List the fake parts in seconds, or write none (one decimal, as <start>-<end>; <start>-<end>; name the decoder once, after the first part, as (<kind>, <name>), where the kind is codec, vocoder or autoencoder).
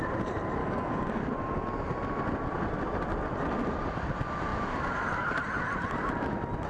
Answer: 0.6-1.2 (codec, DAC)